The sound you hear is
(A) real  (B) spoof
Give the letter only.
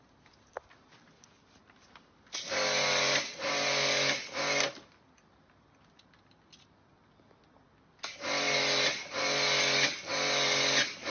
A